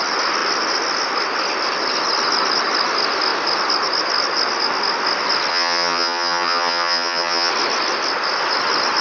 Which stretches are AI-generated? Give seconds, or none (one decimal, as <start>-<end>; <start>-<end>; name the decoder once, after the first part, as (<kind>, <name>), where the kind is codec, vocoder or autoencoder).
5.5-7.5 (vocoder, HiFi-GAN)